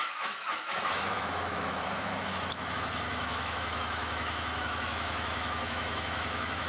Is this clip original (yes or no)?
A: no